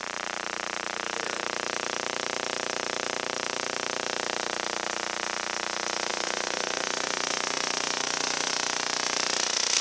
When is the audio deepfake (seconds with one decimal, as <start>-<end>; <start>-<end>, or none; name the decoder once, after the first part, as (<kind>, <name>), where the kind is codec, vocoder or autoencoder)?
6.1-8.5 (vocoder, Vocos)